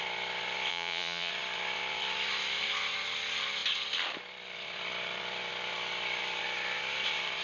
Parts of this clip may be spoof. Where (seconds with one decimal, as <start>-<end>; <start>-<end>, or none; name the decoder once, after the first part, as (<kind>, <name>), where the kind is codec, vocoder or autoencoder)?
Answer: 0.7-1.3 (vocoder, Vocos)